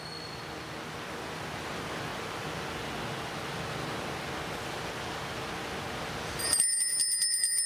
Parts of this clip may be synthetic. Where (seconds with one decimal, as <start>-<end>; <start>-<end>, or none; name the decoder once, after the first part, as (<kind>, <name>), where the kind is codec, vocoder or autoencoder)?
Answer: none